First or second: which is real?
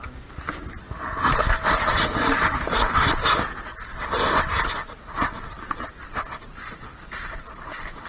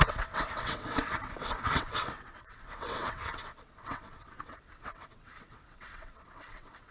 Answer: first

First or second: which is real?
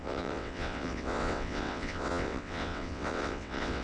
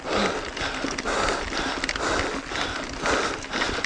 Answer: second